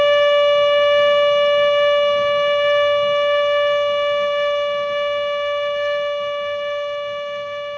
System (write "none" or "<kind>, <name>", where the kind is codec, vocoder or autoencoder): autoencoder, DAC-VAE